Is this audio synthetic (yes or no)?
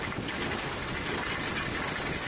no